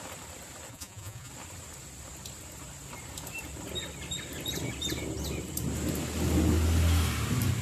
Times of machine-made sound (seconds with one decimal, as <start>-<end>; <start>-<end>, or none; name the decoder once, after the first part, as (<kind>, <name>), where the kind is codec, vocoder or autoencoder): 0.7-1.3 (vocoder, Vocos)